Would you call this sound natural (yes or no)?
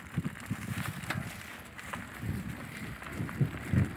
yes